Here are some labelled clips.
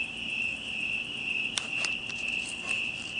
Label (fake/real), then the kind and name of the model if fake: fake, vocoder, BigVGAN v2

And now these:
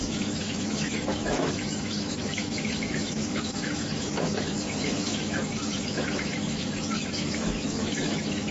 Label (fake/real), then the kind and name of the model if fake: fake, autoencoder, DAC-VAE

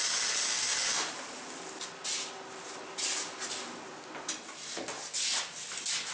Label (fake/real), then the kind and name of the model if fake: real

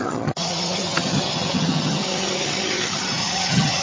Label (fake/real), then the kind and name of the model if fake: fake, vocoder, HiFi-GAN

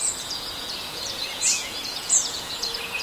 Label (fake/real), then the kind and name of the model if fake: fake, vocoder, Vocos